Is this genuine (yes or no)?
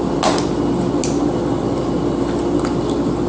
yes